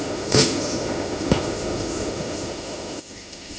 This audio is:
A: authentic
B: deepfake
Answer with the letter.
B